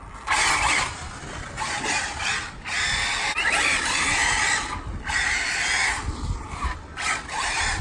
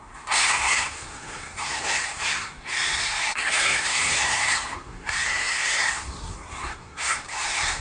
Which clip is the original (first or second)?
first